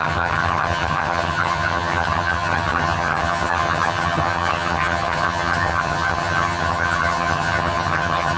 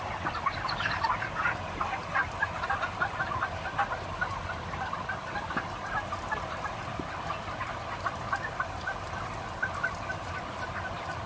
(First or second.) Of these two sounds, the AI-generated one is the first